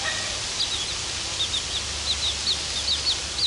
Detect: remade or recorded recorded